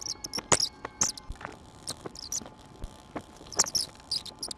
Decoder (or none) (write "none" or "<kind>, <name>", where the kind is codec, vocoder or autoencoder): none